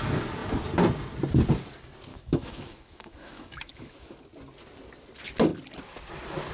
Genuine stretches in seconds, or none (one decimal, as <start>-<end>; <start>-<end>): 0.0-2.1; 4.1-6.5